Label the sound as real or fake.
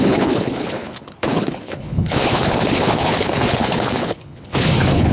fake